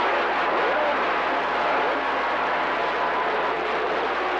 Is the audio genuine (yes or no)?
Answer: yes